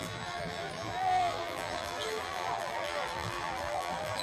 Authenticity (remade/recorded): remade